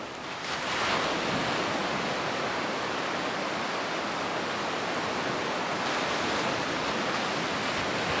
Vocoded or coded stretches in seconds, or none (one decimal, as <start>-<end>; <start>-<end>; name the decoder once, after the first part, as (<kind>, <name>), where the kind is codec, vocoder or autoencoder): none